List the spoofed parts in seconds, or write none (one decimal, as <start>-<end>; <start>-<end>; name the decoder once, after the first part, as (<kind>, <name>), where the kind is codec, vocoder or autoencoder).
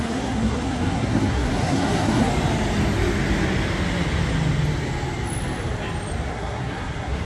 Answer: 0.0-2.3 (codec, SNAC); 6.3-7.2